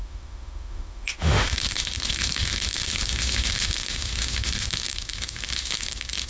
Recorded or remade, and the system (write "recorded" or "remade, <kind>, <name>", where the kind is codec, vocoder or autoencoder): remade, autoencoder, DAC-VAE